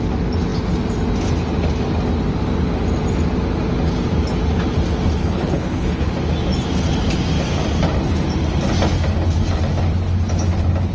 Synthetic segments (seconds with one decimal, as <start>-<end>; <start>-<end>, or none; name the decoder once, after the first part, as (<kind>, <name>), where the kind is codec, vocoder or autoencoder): 5.2-6.1 (codec, HILCodec)